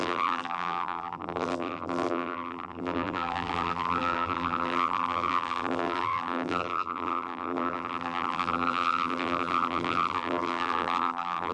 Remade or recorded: remade